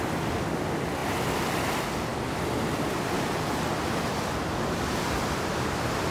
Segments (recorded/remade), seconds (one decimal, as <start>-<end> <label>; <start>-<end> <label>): 0.0-6.1 recorded